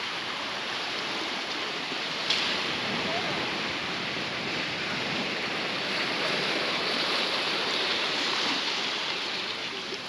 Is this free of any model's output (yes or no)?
no